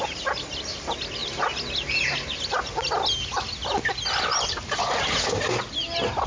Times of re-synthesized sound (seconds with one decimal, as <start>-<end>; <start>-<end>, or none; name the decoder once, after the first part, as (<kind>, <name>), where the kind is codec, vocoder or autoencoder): none